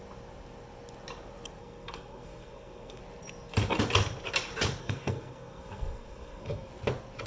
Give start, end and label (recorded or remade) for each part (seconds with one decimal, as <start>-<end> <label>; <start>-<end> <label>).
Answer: 0.0-1.6 recorded; 1.6-3.0 remade; 3.0-4.8 recorded; 4.8-6.7 remade; 6.7-7.3 recorded